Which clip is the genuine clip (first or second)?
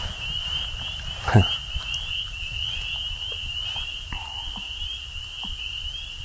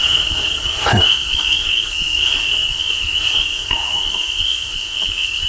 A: first